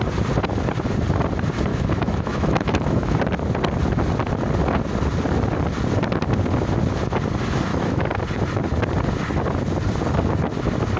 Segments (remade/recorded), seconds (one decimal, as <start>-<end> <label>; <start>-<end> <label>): 0.0-1.7 recorded; 1.7-3.2 remade; 3.2-7.7 recorded; 7.7-8.2 remade; 8.2-11.0 recorded